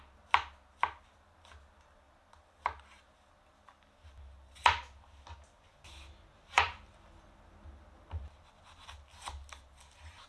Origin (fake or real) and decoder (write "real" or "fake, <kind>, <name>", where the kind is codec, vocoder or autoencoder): real